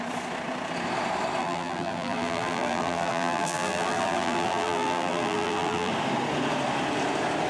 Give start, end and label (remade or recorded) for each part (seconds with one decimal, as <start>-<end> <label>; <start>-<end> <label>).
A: 0.0-1.4 recorded; 1.4-5.9 remade; 5.9-7.5 recorded